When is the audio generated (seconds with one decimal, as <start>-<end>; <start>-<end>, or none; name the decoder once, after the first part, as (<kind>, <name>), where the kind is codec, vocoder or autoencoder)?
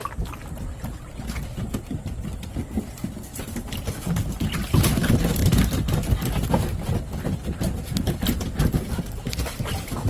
none